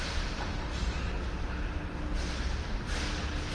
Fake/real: real